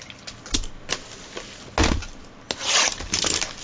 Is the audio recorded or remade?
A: recorded